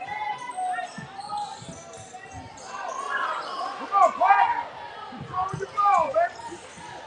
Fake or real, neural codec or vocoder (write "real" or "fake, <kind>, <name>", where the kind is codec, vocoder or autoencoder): real